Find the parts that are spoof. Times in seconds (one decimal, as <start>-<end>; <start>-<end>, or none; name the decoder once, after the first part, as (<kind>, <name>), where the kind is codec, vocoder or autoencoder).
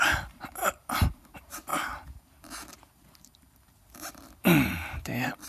0.0-5.5 (vocoder, BigVGAN v2)